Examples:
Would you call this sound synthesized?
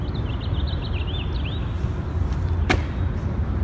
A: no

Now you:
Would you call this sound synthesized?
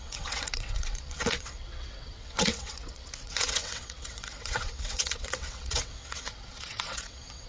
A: yes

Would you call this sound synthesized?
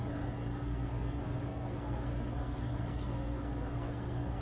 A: yes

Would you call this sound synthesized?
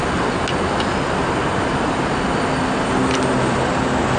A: no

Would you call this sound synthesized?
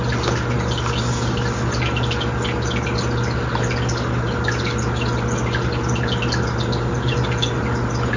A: no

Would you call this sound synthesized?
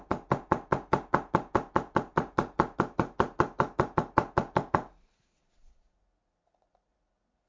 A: yes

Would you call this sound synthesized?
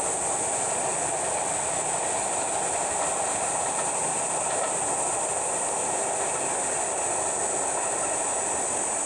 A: no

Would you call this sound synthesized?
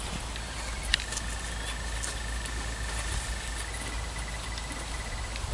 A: no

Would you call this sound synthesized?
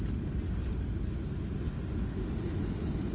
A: no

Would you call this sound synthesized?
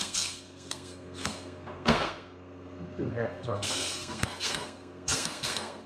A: yes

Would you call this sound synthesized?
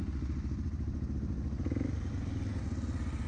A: no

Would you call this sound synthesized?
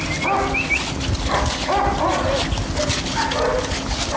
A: no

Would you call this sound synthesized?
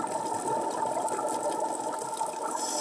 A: no